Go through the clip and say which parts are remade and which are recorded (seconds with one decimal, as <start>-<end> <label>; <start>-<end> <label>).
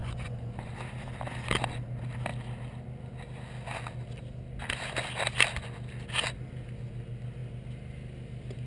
0.0-0.7 remade; 0.7-8.7 recorded